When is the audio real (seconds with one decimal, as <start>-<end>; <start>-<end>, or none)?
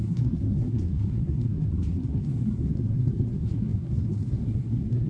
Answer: none